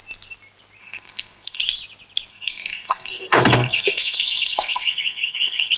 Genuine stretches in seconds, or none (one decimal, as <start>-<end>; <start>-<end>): 0.0-0.8; 1.6-2.3